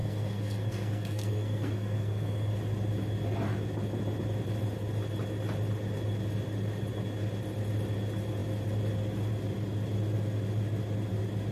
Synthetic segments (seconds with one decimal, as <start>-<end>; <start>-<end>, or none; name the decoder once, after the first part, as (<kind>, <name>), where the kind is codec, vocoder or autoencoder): 0.0-2.5 (codec, SNAC)